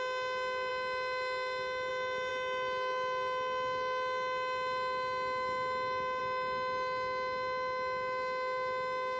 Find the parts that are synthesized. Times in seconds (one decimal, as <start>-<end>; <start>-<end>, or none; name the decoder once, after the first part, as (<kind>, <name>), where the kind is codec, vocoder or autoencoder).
none